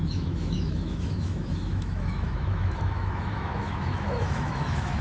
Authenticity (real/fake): fake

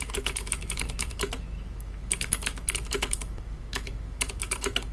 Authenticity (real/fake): fake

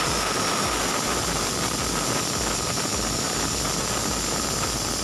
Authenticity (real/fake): real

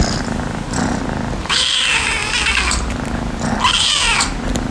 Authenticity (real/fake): real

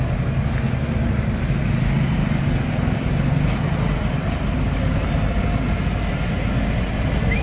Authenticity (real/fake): real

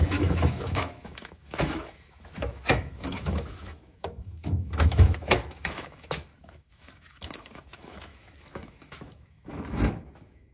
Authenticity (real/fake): fake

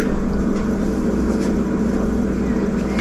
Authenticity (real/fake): real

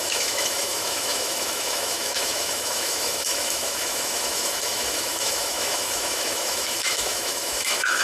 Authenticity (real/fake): fake